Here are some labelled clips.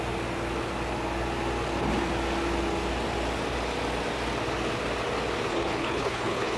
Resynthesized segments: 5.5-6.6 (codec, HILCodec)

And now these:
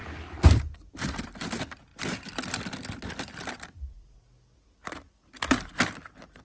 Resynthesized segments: 0.0-1.4 (vocoder, BigVGAN v2); 1.9-5.7

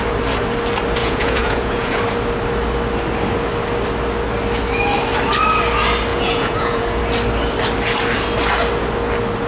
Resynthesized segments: 1.0-2.0 (vocoder, Vocos); 6.1-7.0

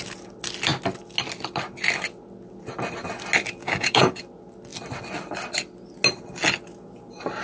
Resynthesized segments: 3.6-4.2 (codec, DAC)

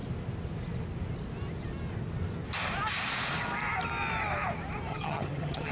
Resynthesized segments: 4.9-5.7 (vocoder, HiFi-GAN)

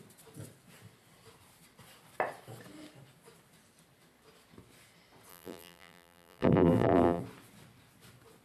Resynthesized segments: 5.3-7.2 (vocoder, BigVGAN v2)